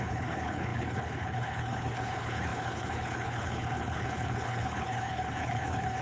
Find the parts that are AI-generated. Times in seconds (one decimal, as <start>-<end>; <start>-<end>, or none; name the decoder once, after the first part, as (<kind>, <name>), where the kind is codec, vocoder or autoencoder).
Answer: 0.0-6.0 (codec, HILCodec)

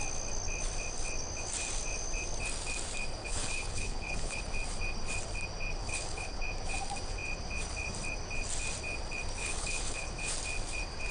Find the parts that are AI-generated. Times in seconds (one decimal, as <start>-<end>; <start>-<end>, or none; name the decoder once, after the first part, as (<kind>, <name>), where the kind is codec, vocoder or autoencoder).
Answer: 3.2-4.4 (codec, HILCodec); 5.8-6.4; 9.4-10.1